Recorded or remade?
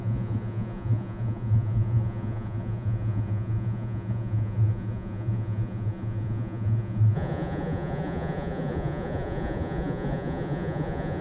remade